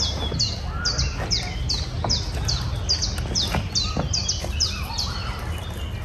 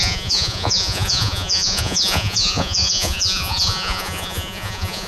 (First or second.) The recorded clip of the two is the first